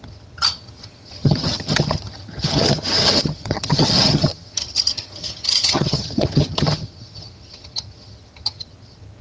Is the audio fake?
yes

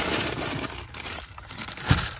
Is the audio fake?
yes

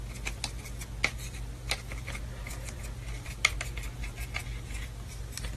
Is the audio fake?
no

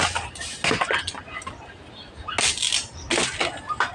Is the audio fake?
no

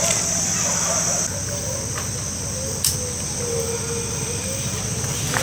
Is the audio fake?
no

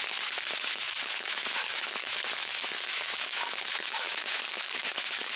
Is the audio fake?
yes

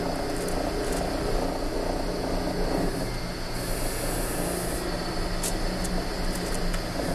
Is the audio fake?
no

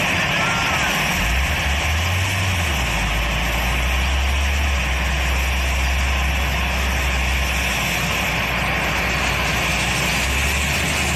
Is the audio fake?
no